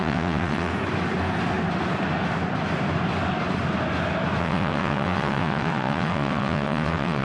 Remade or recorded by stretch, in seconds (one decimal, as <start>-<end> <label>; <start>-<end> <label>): 0.0-0.7 remade; 0.7-4.4 recorded; 4.4-7.2 remade